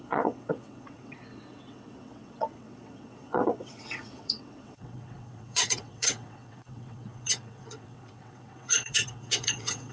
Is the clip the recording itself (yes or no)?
no